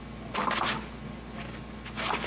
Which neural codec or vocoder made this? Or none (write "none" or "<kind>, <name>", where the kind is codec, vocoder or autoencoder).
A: none